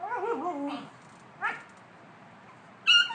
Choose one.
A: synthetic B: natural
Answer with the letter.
B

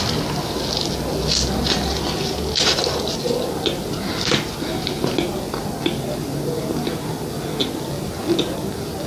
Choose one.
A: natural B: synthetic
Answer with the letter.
A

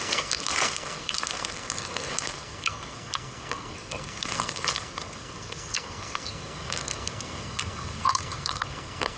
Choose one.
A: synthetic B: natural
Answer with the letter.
A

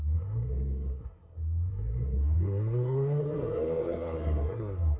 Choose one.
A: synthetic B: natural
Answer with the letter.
A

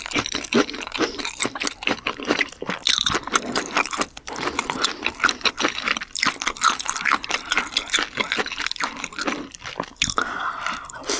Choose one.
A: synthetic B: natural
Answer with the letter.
A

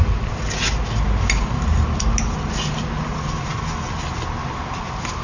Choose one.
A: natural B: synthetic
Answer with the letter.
A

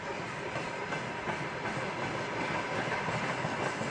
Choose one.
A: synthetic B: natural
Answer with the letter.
B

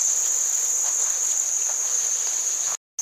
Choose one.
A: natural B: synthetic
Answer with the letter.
A